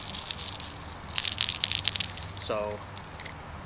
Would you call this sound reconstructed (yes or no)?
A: no